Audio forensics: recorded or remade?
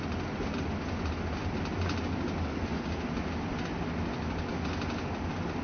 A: recorded